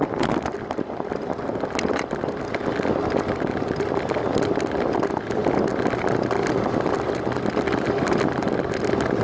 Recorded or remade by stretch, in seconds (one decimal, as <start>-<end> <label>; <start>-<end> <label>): 0.0-9.2 recorded